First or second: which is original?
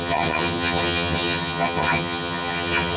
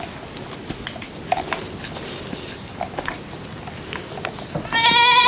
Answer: second